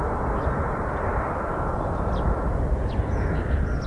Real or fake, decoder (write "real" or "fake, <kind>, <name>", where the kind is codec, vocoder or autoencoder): real